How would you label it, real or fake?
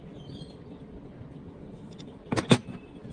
real